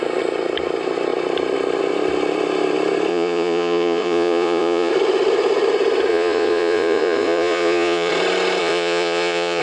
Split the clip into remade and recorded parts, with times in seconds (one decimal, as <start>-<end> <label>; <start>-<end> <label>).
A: 0.0-3.1 recorded; 3.1-4.9 remade; 4.9-6.1 recorded; 6.1-8.1 remade; 8.1-8.6 recorded; 8.6-9.6 remade